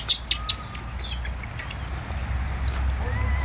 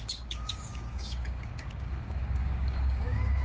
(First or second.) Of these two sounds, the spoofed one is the second